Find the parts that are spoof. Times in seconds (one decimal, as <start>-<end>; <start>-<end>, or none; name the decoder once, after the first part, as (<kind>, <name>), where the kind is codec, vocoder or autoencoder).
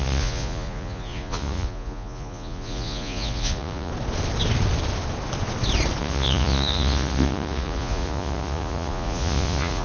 0.0-3.9 (vocoder, Vocos); 6.0-9.8